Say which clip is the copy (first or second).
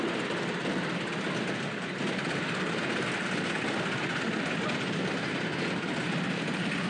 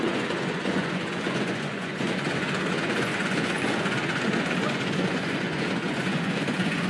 second